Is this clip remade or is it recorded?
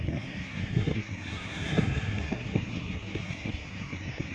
remade